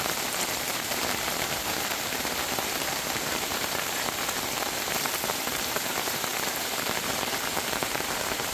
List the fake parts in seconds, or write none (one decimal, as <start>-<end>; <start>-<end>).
0.0-8.5